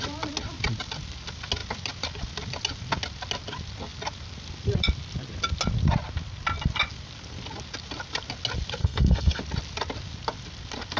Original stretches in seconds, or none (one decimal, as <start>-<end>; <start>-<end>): 0.0-8.8; 9.4-11.0